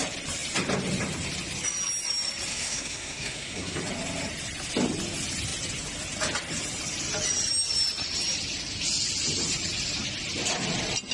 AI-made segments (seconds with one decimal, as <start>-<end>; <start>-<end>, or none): 2.5-3.8